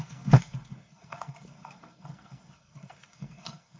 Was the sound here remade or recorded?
remade